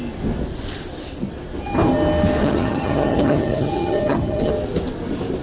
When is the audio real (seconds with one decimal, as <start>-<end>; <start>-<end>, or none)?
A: 0.0-2.4; 4.5-5.4